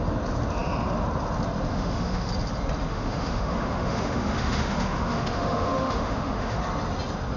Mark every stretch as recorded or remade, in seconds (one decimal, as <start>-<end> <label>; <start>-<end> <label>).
0.0-1.7 recorded; 1.7-2.3 remade; 2.3-2.9 recorded; 2.9-6.6 remade; 6.6-7.4 recorded